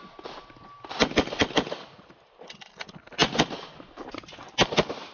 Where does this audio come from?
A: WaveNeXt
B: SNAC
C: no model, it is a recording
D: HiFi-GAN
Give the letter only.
C